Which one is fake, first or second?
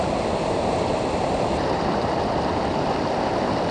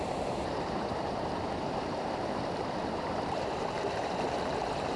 second